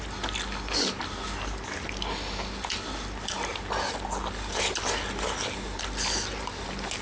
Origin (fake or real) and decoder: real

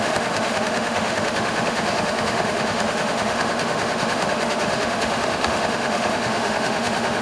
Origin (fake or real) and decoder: fake, autoencoder, DAC-VAE